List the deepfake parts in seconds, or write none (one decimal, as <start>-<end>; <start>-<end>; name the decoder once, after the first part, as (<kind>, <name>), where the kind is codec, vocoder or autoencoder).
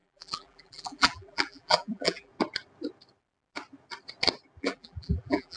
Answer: 0.0-2.3 (vocoder, BigVGAN v2); 4.6-5.6